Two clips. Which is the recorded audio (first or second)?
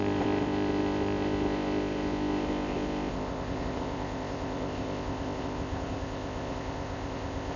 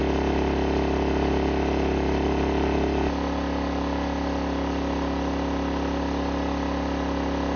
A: second